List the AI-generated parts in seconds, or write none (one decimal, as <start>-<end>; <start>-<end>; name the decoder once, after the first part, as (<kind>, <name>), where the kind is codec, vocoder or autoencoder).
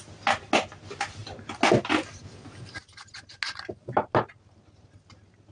none